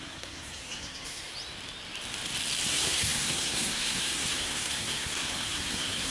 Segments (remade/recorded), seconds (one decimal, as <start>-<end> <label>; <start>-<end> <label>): 0.0-1.3 remade; 1.3-2.7 recorded; 2.7-6.1 remade